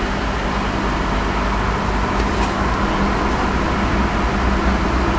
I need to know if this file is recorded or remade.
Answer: recorded